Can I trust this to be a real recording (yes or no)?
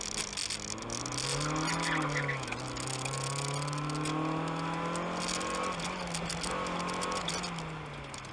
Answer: yes